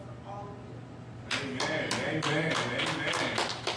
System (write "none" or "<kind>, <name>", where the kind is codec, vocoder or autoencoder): none